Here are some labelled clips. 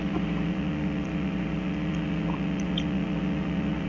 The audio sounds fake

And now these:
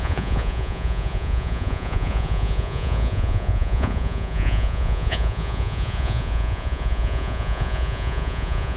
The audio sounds fake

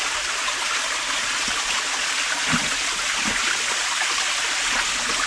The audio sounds real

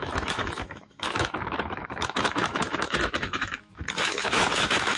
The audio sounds fake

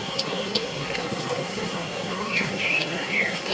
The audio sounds fake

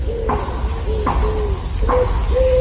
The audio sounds real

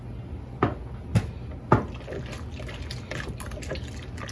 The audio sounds real